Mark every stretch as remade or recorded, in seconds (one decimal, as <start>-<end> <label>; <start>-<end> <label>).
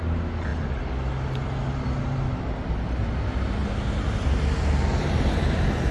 0.0-5.9 recorded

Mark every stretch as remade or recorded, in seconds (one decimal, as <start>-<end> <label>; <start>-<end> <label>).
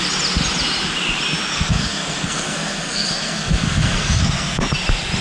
0.0-1.5 recorded; 1.5-4.6 remade; 4.6-5.2 recorded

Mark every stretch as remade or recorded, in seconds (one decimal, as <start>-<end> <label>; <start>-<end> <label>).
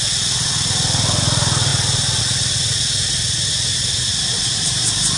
0.0-4.1 recorded; 4.1-5.2 remade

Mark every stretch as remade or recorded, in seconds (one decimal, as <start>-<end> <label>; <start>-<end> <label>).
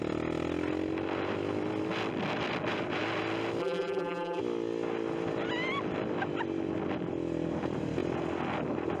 0.0-3.6 recorded; 3.6-4.4 remade; 4.4-9.0 recorded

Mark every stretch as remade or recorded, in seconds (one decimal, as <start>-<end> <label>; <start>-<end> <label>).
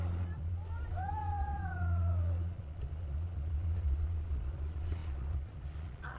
0.0-6.2 remade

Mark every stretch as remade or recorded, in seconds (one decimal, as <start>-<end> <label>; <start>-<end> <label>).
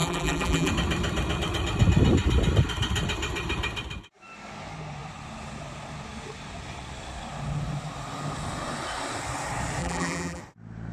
0.0-0.7 remade; 0.7-9.8 recorded; 9.8-10.4 remade; 10.4-10.9 recorded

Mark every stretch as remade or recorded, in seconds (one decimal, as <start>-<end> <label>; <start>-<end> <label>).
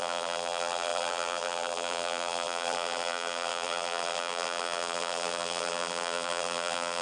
0.0-7.0 remade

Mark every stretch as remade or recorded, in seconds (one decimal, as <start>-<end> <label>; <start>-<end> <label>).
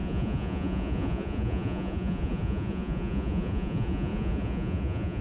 0.0-5.2 remade